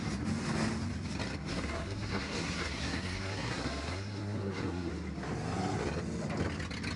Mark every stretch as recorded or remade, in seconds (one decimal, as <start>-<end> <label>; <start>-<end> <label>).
0.0-1.5 recorded; 1.5-4.9 remade; 4.9-7.0 recorded